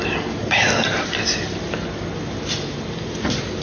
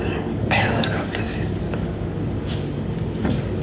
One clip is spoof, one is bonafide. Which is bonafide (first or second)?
first